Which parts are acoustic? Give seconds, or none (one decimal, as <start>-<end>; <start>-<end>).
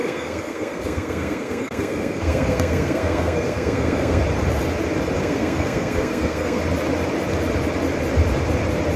4.2-5.2; 6.6-9.0